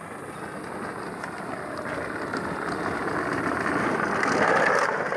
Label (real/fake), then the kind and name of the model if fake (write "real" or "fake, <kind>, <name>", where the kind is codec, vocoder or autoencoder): real